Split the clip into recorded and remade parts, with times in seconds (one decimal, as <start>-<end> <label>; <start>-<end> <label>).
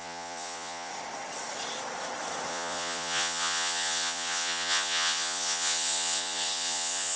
0.0-0.9 remade; 0.9-2.5 recorded; 2.5-7.2 remade